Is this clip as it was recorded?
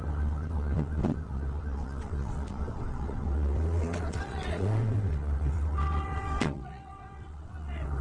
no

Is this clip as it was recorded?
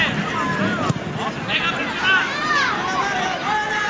yes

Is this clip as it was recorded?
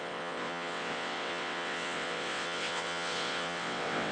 no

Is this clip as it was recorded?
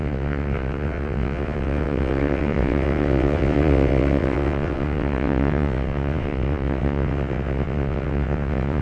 no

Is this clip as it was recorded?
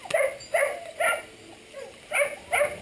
yes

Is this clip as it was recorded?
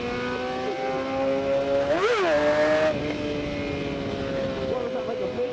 yes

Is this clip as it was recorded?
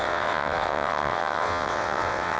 no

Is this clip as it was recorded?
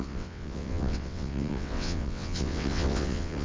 no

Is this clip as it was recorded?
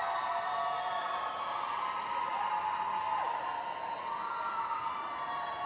yes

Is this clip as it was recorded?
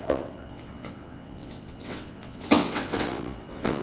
no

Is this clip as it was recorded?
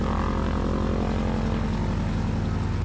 yes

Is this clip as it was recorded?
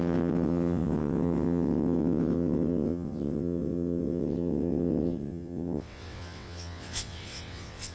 no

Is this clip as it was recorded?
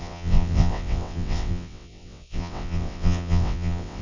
no